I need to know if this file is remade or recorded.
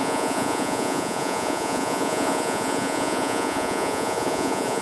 remade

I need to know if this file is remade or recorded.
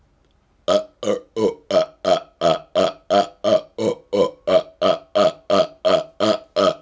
recorded